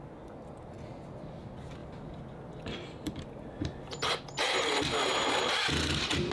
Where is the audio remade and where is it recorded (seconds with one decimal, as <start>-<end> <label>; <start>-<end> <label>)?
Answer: 0.0-6.3 recorded